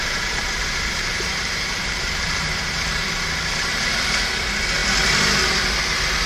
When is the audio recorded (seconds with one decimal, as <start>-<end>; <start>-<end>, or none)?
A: 3.8-6.3